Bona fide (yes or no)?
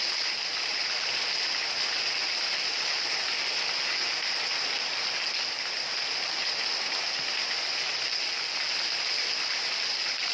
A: yes